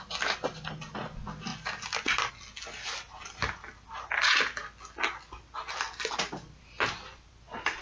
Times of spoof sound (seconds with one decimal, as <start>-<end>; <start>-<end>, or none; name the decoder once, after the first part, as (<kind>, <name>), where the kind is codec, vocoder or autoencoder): none